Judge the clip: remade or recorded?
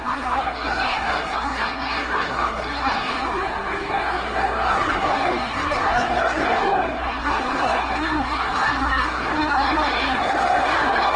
remade